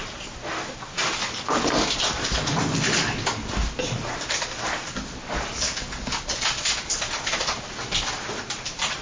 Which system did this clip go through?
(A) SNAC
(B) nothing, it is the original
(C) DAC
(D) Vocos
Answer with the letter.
B